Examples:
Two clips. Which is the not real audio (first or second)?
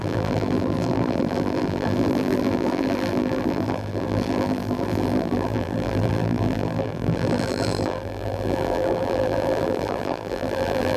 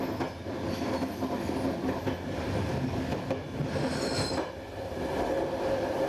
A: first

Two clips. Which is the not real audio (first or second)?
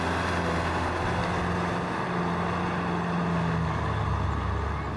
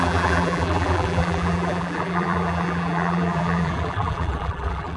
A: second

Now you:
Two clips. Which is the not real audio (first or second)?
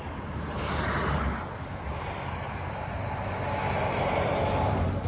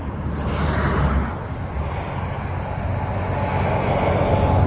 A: first